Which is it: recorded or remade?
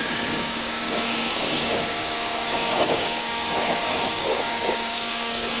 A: remade